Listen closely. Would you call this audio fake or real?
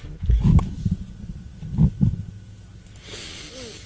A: real